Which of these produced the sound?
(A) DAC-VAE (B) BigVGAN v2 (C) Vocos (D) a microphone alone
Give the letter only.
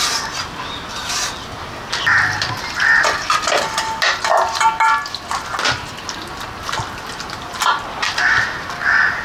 D